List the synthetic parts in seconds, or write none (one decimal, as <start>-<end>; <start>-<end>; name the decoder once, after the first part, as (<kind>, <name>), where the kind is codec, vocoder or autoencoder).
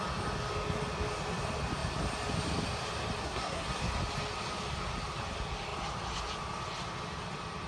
3.2-3.8 (codec, SNAC)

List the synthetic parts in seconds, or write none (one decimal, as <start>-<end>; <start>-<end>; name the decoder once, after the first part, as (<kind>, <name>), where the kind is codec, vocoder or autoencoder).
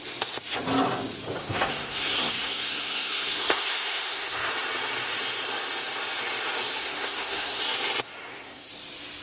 1.4-4.5 (codec, SNAC); 6.8-7.6; 8.2-8.7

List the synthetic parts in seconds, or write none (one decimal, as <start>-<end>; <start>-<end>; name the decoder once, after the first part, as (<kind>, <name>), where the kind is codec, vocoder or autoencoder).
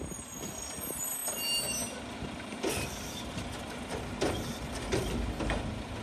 none